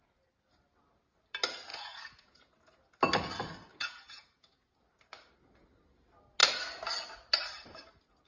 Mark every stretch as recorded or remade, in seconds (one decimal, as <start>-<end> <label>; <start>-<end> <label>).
0.0-1.7 recorded; 1.7-2.9 remade; 2.9-3.7 recorded; 3.7-4.7 remade; 4.7-8.3 recorded